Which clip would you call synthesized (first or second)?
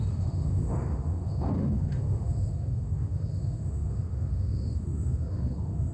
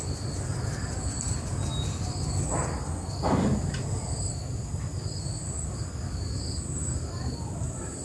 first